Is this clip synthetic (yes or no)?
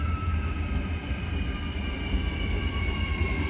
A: yes